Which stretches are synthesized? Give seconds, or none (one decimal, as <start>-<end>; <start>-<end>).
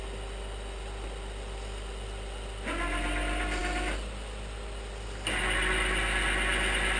none